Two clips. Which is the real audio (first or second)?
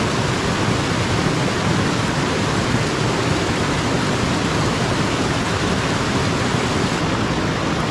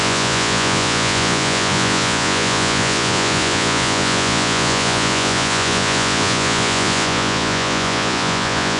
first